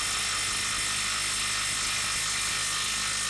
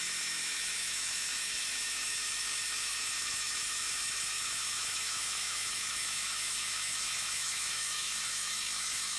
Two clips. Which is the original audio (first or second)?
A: first